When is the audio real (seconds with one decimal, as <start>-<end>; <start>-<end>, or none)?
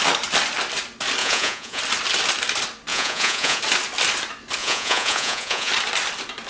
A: 0.0-1.2; 1.8-2.9; 3.6-4.6; 5.7-6.5